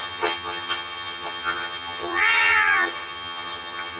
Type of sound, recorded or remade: remade